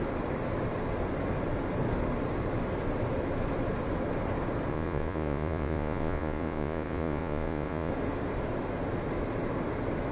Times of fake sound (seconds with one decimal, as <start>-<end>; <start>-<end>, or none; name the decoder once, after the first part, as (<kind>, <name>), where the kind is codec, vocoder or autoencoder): 4.7-7.9 (vocoder, Vocos)

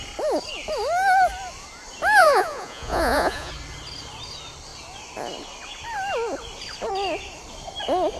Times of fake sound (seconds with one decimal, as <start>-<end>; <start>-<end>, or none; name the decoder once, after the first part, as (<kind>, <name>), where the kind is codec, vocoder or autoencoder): 2.2-3.5 (vocoder, Vocos)

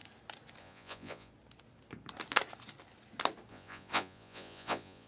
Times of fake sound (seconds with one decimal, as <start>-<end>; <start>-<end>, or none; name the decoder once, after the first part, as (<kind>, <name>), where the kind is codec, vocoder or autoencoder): 0.6-1.3 (vocoder, Vocos); 3.5-5.1

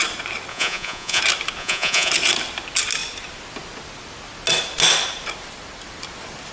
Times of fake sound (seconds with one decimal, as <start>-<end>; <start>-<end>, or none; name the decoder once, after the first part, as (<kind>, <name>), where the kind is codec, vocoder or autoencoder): 0.5-1.2 (vocoder, Vocos); 1.6-2.1

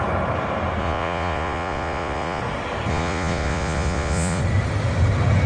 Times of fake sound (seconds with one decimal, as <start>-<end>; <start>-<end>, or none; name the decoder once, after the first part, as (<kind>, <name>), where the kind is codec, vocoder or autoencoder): 0.8-2.4 (vocoder, Vocos); 2.9-4.4

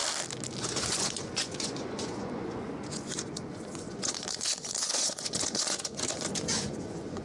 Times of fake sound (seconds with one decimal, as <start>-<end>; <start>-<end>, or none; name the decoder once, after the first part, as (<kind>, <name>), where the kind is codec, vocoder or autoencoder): 0.6-7.2 (vocoder, Vocos)